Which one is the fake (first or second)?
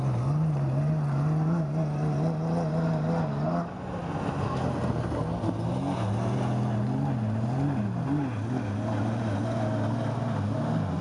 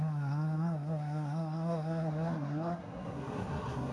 second